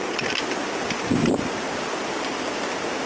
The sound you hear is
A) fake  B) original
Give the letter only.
B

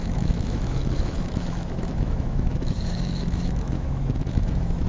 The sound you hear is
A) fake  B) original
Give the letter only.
A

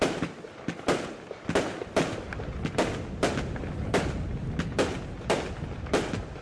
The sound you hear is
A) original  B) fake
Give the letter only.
A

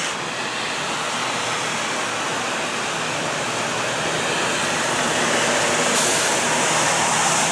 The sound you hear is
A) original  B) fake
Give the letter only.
A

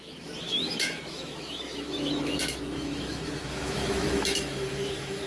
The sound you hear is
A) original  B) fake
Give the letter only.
B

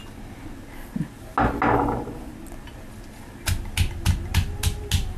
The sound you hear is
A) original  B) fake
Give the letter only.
A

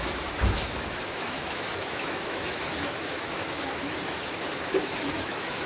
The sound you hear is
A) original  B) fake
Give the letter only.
B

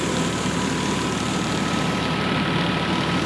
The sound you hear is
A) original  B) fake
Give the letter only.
A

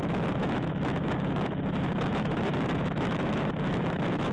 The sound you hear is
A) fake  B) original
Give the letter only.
A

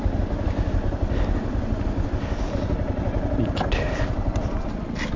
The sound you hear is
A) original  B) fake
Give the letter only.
A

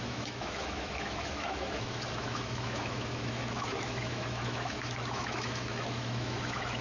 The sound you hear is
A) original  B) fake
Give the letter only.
B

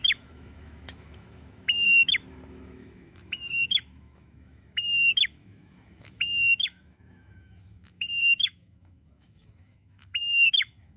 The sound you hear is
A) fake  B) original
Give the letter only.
A